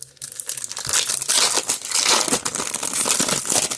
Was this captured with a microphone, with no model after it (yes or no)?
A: yes